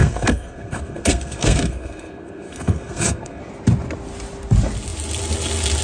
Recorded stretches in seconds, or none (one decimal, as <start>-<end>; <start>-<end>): 3.4-5.8